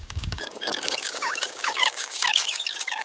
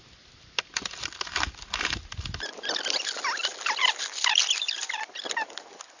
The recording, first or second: second